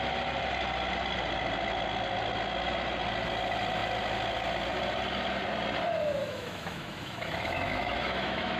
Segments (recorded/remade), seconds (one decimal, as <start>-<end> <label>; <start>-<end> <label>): 0.0-6.2 recorded; 6.2-8.6 remade